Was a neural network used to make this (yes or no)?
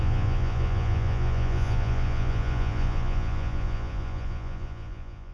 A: yes